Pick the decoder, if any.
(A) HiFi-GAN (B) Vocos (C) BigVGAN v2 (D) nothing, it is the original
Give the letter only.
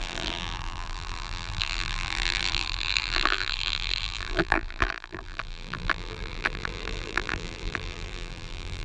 C